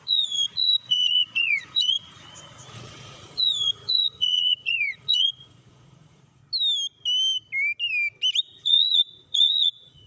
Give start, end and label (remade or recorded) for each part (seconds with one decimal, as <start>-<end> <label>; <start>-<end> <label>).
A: 0.0-6.4 remade; 6.4-8.4 recorded; 8.4-10.1 remade